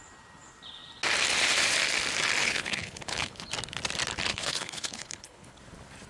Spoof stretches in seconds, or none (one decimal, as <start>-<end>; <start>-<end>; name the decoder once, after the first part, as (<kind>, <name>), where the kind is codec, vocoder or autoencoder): 2.4-3.5 (codec, HILCodec); 4.3-5.6